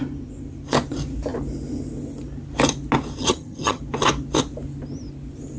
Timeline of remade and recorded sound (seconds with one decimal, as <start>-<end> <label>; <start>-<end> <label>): 0.0-3.2 recorded; 3.2-3.8 remade; 3.8-5.6 recorded